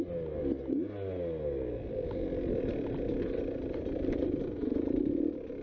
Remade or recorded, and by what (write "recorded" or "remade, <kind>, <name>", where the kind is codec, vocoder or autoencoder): recorded